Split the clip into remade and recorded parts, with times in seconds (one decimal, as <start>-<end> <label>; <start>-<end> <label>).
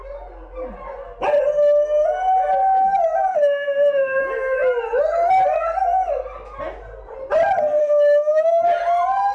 0.0-3.3 recorded; 3.3-4.2 remade; 4.2-7.8 recorded; 7.8-8.6 remade; 8.6-9.3 recorded